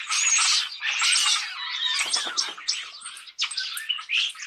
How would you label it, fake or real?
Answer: real